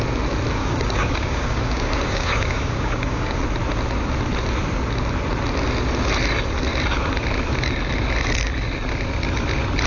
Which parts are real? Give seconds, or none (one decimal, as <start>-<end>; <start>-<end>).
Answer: 0.0-0.6; 3.4-9.9